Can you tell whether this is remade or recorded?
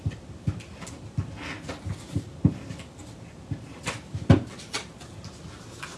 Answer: recorded